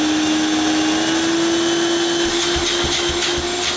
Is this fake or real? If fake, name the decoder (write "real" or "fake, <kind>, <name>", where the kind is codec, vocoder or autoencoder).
real